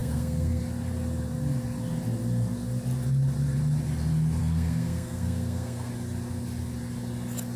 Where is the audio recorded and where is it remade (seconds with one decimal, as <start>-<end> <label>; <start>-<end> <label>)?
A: 0.0-0.6 remade; 0.6-4.4 recorded; 4.4-5.9 remade; 5.9-7.6 recorded